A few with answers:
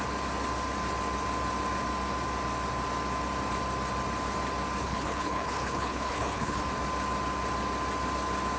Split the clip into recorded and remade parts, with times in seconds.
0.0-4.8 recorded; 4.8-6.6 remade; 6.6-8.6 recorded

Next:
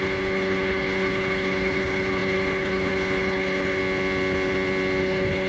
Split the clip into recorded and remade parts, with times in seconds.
0.0-3.8 remade; 3.8-5.0 recorded; 5.0-5.5 remade